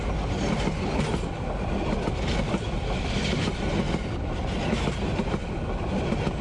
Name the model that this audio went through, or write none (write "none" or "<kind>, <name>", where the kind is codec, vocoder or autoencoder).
none